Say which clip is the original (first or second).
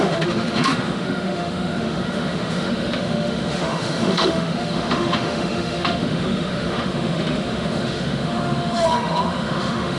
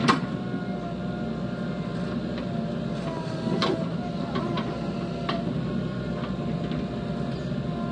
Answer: second